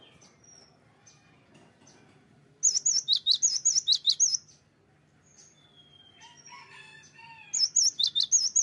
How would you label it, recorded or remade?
recorded